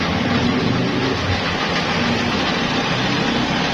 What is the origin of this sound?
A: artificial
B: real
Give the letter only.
B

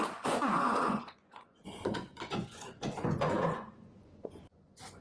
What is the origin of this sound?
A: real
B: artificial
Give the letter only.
B